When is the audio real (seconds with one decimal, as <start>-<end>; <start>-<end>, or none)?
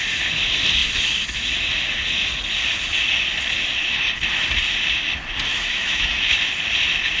0.0-5.5; 6.4-7.2